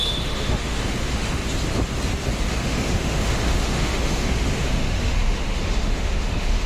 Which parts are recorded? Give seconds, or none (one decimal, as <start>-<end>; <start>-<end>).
1.4-2.5